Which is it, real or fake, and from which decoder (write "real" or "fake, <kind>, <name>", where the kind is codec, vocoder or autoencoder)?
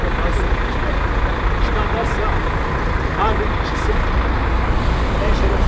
real